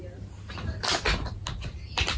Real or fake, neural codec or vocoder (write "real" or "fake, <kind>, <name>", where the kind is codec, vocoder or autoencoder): real